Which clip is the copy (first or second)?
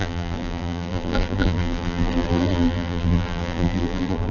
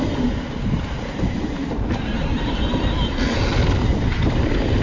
first